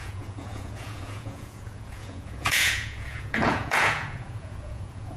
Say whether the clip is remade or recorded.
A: remade